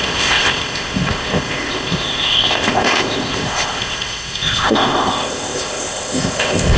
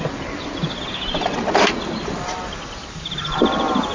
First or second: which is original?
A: second